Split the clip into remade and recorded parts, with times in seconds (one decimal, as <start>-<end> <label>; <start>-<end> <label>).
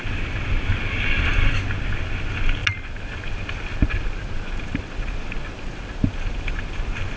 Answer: 0.0-7.2 recorded